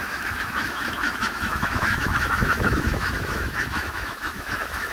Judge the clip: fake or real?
fake